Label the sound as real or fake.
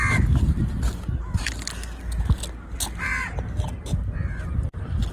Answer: real